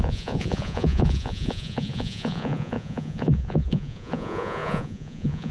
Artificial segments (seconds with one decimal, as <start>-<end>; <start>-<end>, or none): 0.0-5.5